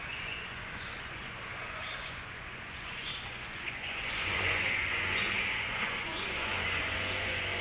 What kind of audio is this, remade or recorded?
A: remade